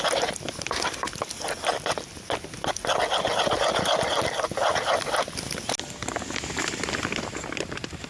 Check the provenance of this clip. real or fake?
real